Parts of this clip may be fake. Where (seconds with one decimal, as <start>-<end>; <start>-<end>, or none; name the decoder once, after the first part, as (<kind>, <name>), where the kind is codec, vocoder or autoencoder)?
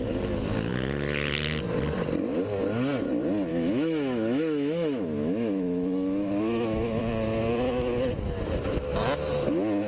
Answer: 3.5-7.0 (autoencoder, DAC-VAE)